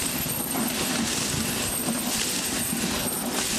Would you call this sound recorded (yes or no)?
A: yes